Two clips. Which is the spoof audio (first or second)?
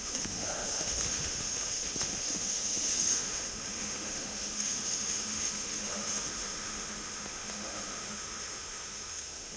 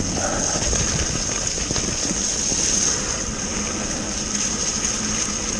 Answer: first